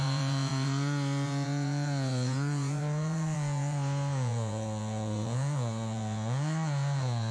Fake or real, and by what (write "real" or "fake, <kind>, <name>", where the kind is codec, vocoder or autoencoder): fake, vocoder, Vocos